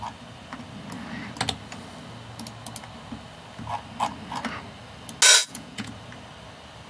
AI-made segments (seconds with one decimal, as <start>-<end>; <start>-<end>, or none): 5.4-5.9